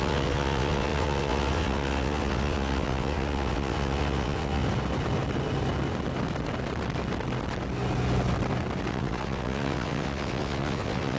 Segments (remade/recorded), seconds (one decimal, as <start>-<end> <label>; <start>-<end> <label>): 0.0-4.6 remade; 4.6-8.9 recorded; 8.9-11.2 remade